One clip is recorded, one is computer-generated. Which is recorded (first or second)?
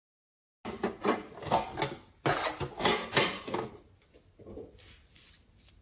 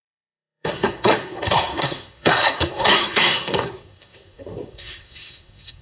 first